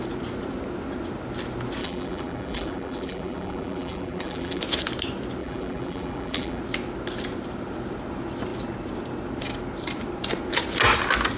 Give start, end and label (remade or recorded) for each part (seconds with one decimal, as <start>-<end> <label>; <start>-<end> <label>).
0.0-1.8 recorded; 1.8-4.6 remade; 4.6-5.4 recorded; 5.4-6.6 remade; 6.6-11.4 recorded